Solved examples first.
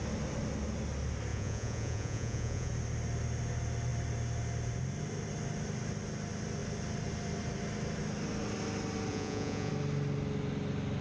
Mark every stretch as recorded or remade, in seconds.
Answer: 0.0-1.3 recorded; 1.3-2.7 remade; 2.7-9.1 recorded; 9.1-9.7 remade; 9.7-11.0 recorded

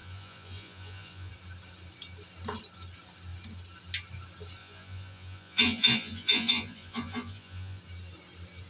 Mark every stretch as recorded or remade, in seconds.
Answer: 0.0-1.3 remade; 1.3-4.6 recorded; 4.6-7.8 remade; 7.8-8.7 recorded

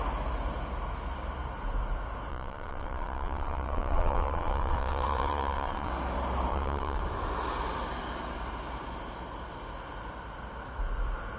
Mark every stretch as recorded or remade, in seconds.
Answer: 0.0-2.3 recorded; 2.3-5.9 remade; 5.9-6.5 recorded; 6.5-7.0 remade; 7.0-11.4 recorded

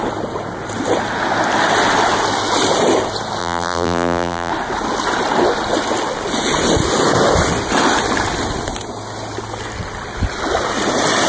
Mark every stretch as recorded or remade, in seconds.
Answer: 0.0-3.4 recorded; 3.4-4.5 remade; 4.5-11.3 recorded

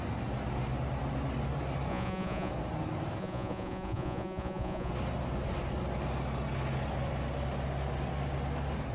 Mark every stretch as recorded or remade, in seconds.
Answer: 0.0-1.9 recorded; 1.9-2.5 remade; 2.5-3.2 recorded; 3.2-4.9 remade; 4.9-8.9 recorded

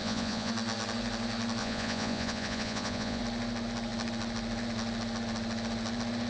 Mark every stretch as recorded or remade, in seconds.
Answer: 0.0-0.5 remade; 0.5-1.6 recorded; 1.6-3.2 remade; 3.2-6.3 recorded

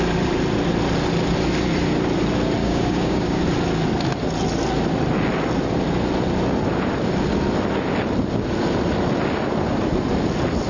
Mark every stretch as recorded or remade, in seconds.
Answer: 0.0-2.6 recorded; 2.6-3.4 remade; 3.4-10.7 recorded